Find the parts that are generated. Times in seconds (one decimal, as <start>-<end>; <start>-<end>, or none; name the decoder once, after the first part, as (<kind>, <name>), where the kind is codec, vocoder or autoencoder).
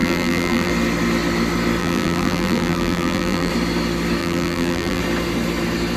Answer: 0.0-0.7 (vocoder, BigVGAN v2); 1.8-3.5; 4.2-5.0